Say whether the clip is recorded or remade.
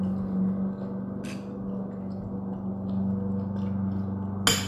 recorded